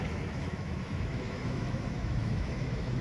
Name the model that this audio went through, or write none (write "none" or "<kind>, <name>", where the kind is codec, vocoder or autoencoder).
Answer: autoencoder, DAC-VAE